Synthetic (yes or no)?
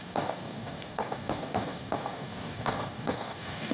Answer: yes